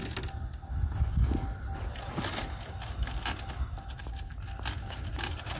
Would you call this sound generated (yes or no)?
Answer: no